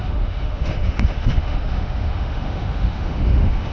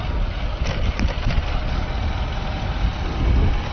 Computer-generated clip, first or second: first